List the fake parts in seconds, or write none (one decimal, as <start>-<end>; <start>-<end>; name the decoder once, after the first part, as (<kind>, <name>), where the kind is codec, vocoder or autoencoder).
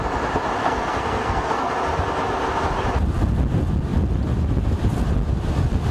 0.6-1.7 (codec, SNAC)